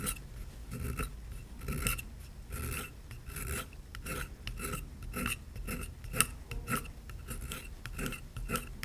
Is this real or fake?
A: real